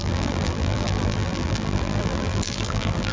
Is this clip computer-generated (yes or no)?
yes